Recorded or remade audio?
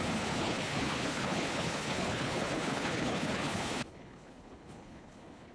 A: remade